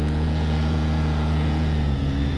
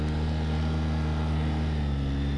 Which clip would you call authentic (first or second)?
second